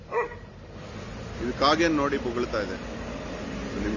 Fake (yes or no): no